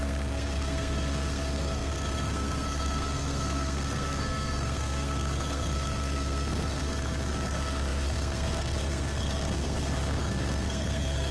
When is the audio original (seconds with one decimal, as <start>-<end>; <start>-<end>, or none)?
none